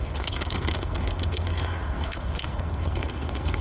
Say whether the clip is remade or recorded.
remade